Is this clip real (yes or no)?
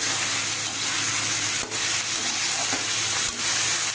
yes